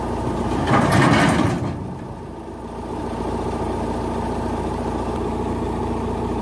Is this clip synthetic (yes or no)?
yes